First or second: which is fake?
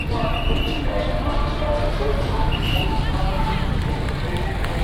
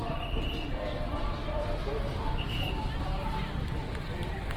second